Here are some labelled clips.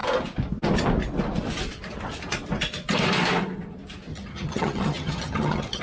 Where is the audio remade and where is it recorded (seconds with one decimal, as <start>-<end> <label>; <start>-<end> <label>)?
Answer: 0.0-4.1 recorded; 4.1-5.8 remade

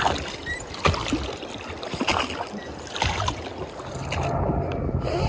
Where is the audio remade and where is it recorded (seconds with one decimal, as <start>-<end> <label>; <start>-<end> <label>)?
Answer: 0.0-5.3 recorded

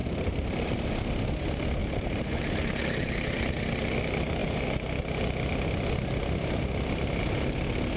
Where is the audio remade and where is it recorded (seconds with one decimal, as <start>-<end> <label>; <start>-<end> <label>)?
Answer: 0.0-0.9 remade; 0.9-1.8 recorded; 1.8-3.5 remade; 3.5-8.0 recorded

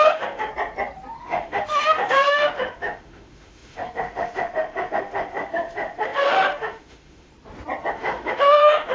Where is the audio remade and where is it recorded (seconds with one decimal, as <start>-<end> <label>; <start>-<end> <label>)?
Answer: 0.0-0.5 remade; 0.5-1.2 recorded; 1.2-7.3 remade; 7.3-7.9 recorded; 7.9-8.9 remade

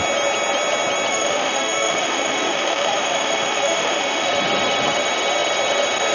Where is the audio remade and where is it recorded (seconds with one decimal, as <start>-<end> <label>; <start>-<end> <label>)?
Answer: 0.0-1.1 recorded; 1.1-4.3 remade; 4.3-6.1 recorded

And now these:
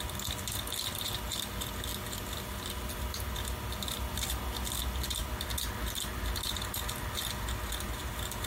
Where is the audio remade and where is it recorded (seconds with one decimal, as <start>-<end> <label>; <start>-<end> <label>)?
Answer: 0.0-8.5 recorded